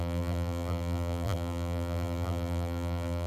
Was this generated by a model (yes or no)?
yes